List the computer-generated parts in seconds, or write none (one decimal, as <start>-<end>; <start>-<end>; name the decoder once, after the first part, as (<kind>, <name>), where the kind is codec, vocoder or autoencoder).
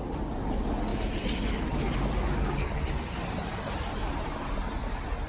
none